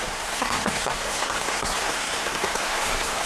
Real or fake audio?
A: fake